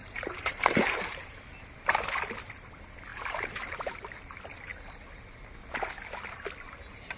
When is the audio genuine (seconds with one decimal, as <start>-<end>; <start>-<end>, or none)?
2.1-3.1; 3.9-7.2